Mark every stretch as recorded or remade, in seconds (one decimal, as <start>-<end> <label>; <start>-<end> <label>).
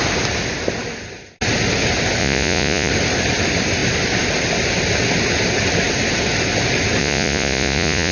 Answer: 0.0-2.2 recorded; 2.2-2.9 remade; 2.9-7.0 recorded; 7.0-8.1 remade